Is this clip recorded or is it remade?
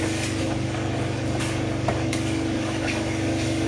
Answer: remade